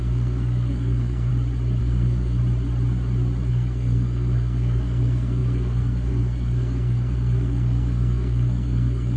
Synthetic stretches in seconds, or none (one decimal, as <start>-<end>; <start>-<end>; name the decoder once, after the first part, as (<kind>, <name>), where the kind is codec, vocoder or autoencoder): 0.0-1.3 (codec, SNAC); 1.8-2.4; 3.5-9.2